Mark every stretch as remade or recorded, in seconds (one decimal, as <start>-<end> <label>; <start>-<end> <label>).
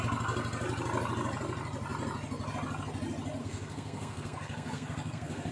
0.0-3.4 recorded; 3.4-5.5 remade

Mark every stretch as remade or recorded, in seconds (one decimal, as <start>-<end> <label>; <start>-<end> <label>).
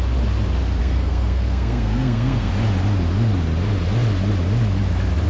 0.0-0.8 recorded; 0.8-2.5 remade; 2.5-5.3 recorded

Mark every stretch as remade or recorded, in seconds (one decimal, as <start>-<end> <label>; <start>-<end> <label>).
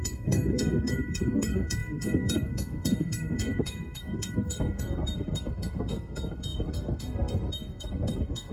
0.0-8.5 remade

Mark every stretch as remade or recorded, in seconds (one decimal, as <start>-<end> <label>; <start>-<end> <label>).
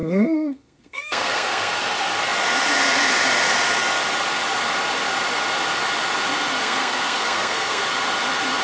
0.0-1.7 remade; 1.7-6.6 recorded; 6.6-7.8 remade; 7.8-8.6 recorded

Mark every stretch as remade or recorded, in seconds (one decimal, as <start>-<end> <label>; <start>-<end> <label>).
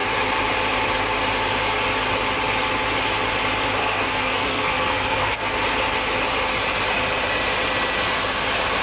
0.0-3.8 recorded; 3.8-5.5 remade; 5.5-8.8 recorded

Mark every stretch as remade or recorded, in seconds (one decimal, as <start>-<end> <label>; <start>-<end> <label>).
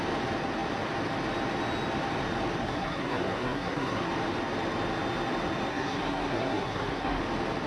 0.0-2.6 recorded; 2.6-4.1 remade; 4.1-5.7 recorded; 5.7-7.2 remade; 7.2-7.7 recorded